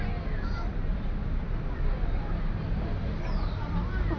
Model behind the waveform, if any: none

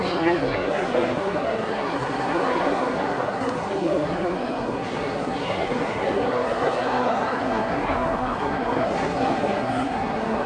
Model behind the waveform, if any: codec, SNAC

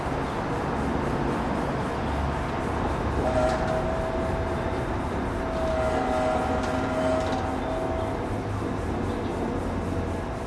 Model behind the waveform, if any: none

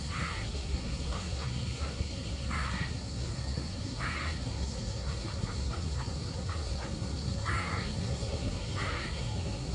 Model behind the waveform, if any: codec, SNAC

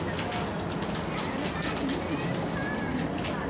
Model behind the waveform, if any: none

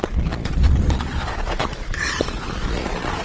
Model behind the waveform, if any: vocoder, Vocos